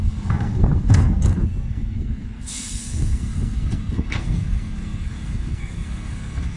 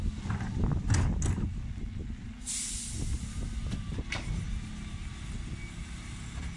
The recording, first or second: second